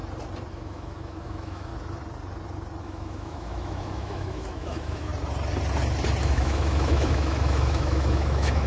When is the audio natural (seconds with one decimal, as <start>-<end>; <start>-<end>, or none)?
0.0-0.5; 1.7-2.8; 5.1-6.2

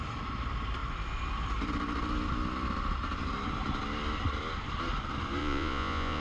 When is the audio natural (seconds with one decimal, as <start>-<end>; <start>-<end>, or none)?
0.0-5.4

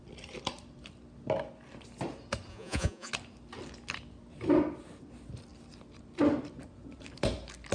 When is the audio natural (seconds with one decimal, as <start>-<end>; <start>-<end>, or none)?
0.0-2.5; 3.1-7.7

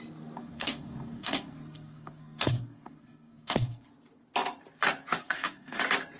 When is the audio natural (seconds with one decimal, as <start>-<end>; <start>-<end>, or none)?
0.0-0.4; 3.9-5.2; 5.8-6.2

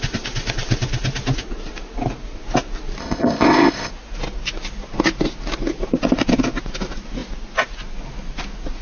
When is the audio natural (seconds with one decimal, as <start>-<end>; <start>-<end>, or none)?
0.0-3.0; 3.9-8.8

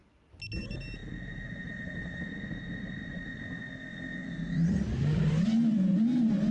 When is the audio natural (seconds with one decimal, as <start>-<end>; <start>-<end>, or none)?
0.0-6.5

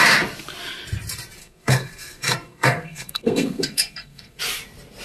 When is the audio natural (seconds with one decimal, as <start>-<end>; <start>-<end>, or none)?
0.0-1.4; 4.4-5.0